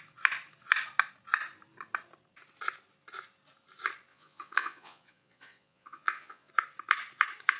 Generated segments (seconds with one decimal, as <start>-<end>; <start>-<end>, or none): 4.1-6.5